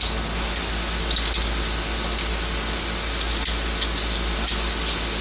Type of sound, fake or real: real